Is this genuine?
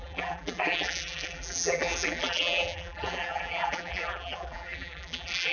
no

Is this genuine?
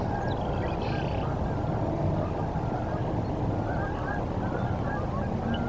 yes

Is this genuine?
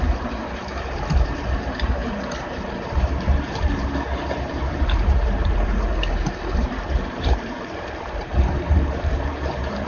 no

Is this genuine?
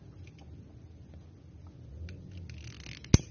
yes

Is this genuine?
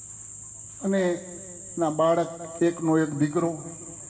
yes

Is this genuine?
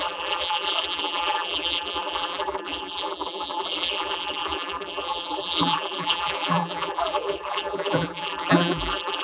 no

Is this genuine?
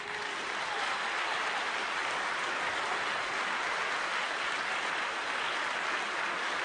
yes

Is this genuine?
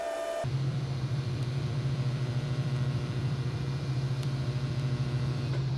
no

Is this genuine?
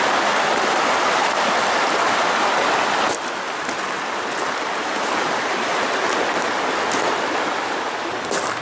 yes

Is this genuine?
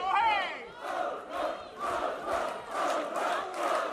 no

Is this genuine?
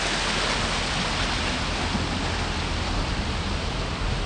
yes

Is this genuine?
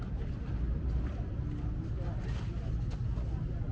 yes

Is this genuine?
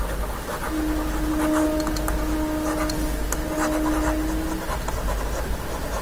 yes